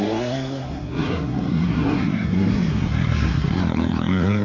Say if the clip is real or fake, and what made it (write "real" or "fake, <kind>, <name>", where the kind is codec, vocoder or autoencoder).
fake, codec, SNAC